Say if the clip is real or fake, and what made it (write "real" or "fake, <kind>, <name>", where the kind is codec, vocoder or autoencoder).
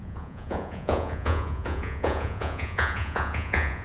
fake, vocoder, Vocos